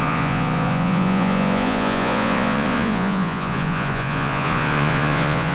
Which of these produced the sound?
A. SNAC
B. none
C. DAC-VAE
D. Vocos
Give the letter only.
D